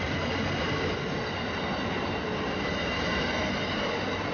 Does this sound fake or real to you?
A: real